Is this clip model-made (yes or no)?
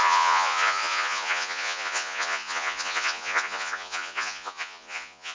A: yes